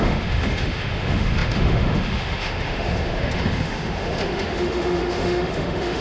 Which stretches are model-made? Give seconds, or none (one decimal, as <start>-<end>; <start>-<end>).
0.0-6.0